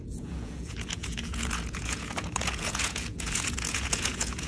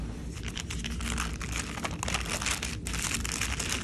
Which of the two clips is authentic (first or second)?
second